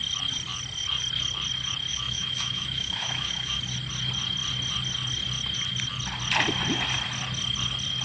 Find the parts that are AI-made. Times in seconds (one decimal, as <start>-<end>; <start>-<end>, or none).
1.9-3.6